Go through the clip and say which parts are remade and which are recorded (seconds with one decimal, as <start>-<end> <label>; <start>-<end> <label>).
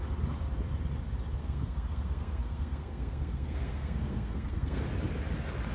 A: 0.0-1.4 recorded; 1.4-4.8 remade; 4.8-5.7 recorded